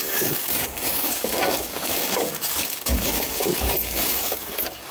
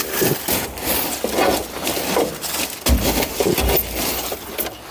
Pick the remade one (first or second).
first